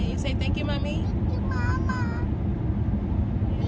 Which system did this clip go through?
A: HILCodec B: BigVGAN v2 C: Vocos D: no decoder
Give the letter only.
D